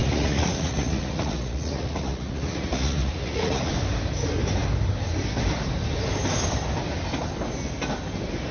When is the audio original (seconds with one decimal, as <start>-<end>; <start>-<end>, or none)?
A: 3.7-8.5